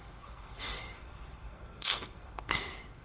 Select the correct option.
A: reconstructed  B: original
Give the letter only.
A